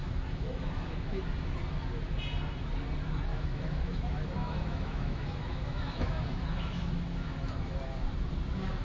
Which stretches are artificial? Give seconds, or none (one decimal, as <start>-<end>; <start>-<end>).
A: 0.0-1.2; 3.3-7.9